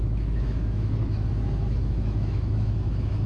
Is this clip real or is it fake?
fake